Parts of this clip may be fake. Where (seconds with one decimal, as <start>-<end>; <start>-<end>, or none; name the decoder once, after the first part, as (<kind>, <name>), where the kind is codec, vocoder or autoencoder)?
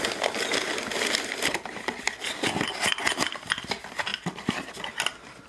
none